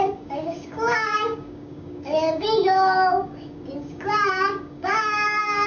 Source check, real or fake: fake